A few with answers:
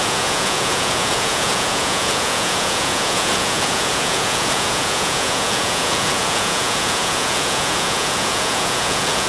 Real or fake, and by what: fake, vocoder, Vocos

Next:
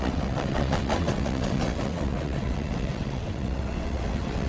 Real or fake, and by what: fake, vocoder, WaveNeXt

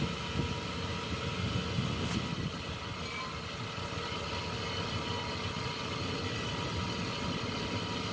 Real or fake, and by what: real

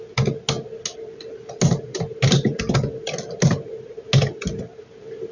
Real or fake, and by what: real